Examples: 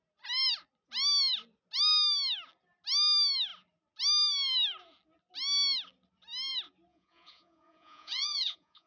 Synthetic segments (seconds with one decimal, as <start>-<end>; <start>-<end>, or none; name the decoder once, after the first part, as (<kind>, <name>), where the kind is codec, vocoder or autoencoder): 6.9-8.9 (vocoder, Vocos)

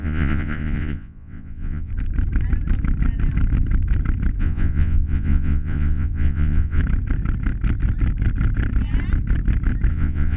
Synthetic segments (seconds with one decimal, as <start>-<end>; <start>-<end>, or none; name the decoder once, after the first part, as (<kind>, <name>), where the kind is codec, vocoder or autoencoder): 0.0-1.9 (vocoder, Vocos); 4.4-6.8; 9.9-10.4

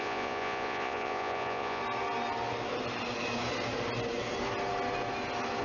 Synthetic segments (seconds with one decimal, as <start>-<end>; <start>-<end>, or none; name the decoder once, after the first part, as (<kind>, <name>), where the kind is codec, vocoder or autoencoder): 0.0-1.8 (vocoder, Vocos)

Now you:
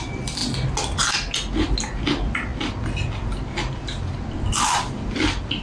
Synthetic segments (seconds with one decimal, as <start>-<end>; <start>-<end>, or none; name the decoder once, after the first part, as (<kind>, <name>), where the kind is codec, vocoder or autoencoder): none